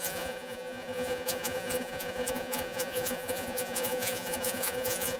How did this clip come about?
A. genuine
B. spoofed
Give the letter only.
B